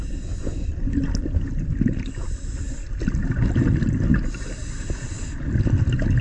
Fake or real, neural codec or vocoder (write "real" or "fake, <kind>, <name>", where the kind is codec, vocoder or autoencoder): real